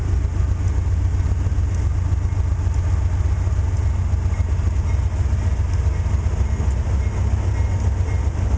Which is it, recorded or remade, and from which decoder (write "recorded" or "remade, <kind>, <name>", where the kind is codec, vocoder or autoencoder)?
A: recorded